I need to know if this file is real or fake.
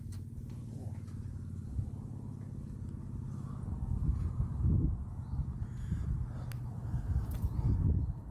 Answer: real